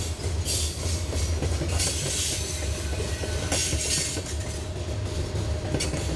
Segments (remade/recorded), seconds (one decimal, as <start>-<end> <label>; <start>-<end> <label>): 0.0-3.6 recorded; 3.6-4.2 remade; 4.2-6.2 recorded